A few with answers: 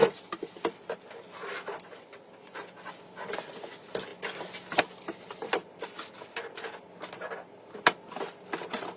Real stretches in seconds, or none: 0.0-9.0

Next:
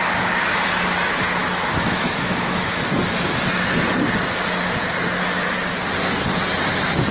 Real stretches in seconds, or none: 0.0-1.4; 2.8-7.1

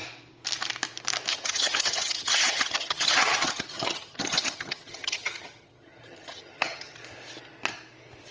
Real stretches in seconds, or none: 0.0-1.3; 7.0-8.3

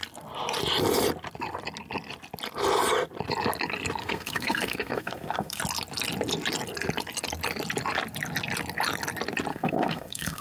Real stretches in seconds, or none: 0.0-4.0; 5.6-9.5

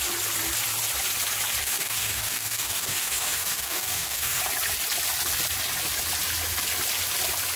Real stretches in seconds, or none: 0.0-1.6; 4.4-7.6

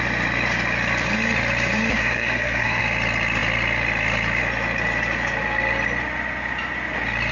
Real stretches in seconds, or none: 0.0-1.9; 2.8-7.3

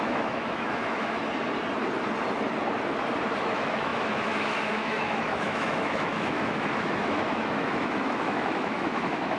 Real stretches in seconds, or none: 1.2-3.4

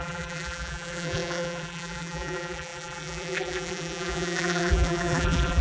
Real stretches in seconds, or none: none